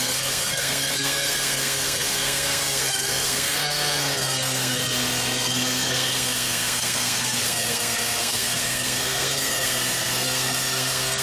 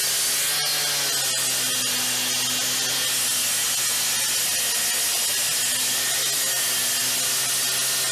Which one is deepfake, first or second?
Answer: first